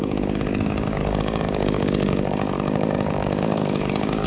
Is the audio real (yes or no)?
no